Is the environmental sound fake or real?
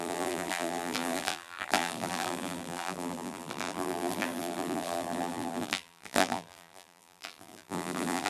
fake